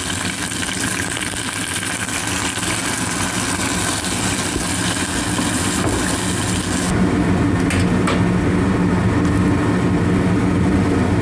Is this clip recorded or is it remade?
recorded